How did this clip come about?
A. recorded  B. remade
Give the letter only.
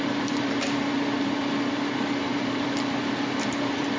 B